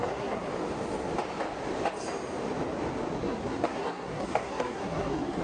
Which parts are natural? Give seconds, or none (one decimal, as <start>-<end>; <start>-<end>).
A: 0.5-3.2